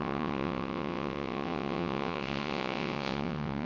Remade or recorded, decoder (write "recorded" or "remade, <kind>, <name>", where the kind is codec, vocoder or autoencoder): remade, vocoder, WaveNeXt